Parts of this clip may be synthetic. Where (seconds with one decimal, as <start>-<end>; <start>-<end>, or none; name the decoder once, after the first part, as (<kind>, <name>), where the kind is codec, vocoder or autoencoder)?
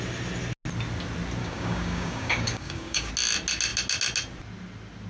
1.4-3.1 (codec, DAC)